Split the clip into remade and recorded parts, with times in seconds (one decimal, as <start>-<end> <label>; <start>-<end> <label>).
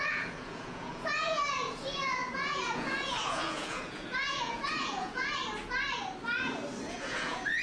0.0-5.4 remade; 5.4-6.9 recorded; 6.9-7.6 remade